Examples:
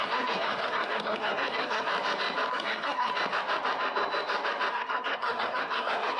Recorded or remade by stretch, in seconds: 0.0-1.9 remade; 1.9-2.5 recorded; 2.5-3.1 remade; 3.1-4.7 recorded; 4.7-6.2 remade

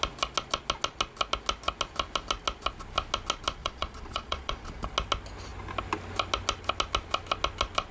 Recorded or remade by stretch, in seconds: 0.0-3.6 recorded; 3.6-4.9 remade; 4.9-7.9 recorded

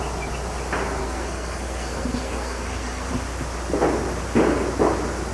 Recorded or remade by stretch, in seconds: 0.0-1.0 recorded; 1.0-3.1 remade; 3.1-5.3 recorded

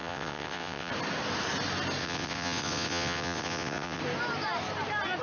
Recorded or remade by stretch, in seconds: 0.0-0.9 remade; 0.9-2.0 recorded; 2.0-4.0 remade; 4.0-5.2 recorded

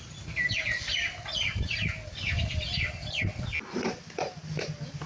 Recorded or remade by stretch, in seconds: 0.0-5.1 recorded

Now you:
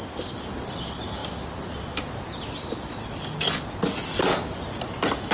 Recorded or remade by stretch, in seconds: 0.0-5.3 recorded

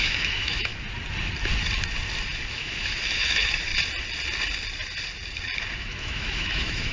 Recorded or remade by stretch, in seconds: 0.0-0.7 remade; 0.7-2.5 recorded; 2.5-3.7 remade; 3.7-5.8 recorded; 5.8-6.9 remade

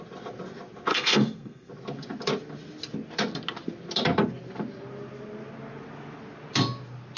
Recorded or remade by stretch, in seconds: 0.0-0.9 recorded; 0.9-1.7 remade; 1.7-7.2 recorded